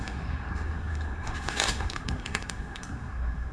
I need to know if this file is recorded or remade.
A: remade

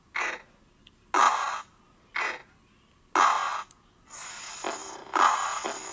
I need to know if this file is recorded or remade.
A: recorded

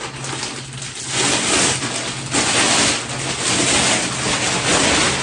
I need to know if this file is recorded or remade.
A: recorded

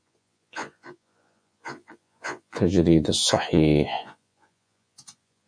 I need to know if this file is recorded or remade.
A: remade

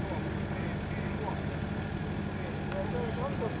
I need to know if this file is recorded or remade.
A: recorded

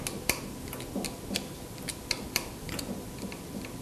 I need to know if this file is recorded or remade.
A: recorded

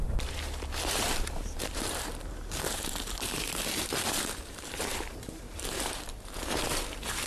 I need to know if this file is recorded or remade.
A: remade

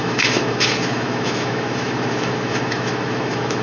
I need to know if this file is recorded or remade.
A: remade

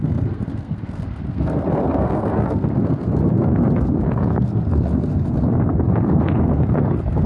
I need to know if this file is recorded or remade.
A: remade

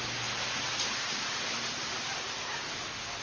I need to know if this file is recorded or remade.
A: recorded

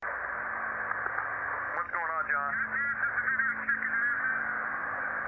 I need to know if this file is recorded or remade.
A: recorded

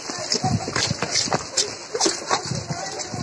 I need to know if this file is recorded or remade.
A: recorded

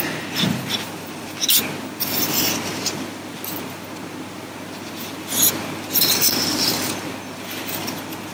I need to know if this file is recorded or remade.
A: recorded